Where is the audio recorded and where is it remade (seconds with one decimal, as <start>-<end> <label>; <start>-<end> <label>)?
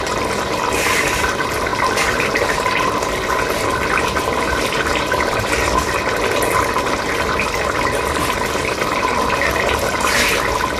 0.0-10.8 recorded